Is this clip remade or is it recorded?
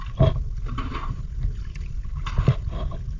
recorded